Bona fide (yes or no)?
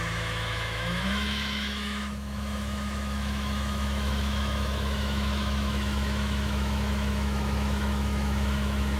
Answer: no